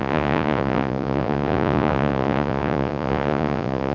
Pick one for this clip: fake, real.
fake